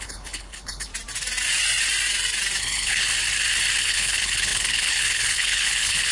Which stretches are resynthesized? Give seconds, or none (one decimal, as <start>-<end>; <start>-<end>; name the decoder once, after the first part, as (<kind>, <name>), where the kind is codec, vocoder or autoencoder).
0.0-0.9 (codec, HILCodec); 2.6-3.1; 3.8-6.1